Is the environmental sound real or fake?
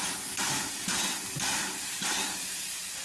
fake